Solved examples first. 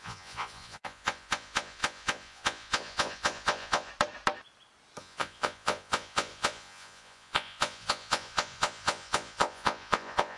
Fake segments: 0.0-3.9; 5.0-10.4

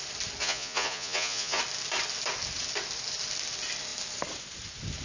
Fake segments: 0.4-1.6

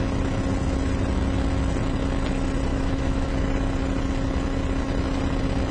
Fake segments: 2.7-3.3

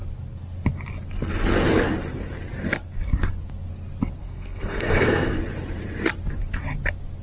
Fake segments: 4.2-5.4